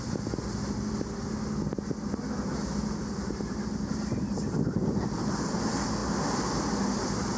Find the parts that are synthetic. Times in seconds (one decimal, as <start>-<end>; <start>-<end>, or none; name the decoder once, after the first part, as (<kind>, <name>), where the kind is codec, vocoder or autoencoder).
3.2-4.4 (vocoder, BigVGAN v2)